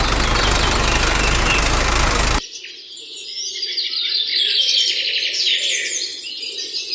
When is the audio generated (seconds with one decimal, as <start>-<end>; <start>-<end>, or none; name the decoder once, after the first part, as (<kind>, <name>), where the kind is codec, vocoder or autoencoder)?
none